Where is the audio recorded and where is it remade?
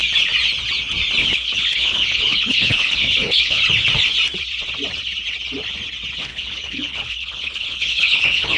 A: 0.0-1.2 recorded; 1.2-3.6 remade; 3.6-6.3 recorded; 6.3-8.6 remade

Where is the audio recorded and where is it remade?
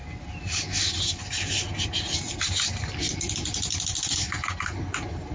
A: 0.0-5.3 recorded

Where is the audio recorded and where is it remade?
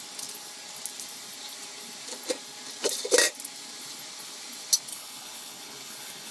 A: 0.0-4.9 recorded; 4.9-6.3 remade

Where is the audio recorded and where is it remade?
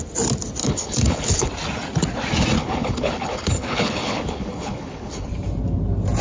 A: 0.0-0.6 recorded; 0.6-1.5 remade; 1.5-2.6 recorded; 2.6-5.3 remade; 5.3-6.2 recorded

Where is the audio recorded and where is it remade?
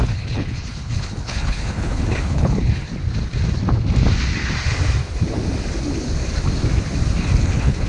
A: 0.0-2.9 remade; 2.9-7.4 recorded; 7.4-7.9 remade